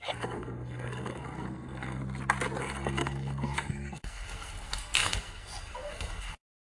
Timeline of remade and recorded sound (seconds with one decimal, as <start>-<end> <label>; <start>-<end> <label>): 0.0-2.0 remade; 2.0-2.6 recorded; 2.6-6.8 remade

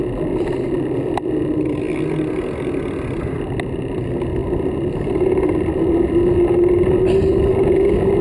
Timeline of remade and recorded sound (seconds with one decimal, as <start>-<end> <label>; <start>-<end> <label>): 0.0-8.2 recorded

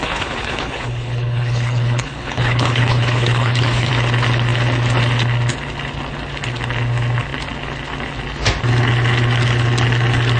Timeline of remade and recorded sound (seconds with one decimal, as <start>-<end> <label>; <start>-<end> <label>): 0.0-3.9 remade; 3.9-10.4 recorded

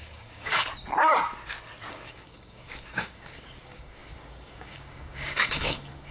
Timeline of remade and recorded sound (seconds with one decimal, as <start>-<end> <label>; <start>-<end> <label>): 0.0-0.6 remade; 0.6-1.9 recorded; 1.9-6.1 remade

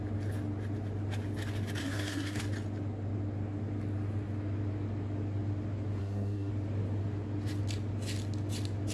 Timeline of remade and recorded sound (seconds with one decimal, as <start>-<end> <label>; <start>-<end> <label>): 0.0-1.8 recorded; 1.8-2.4 remade; 2.4-6.0 recorded; 6.0-6.5 remade; 6.5-8.9 recorded